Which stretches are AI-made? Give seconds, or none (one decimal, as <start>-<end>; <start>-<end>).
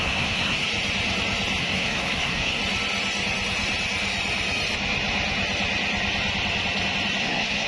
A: 0.0-0.7; 1.6-2.6; 7.2-7.7